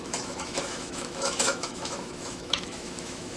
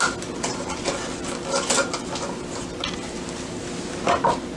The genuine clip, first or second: second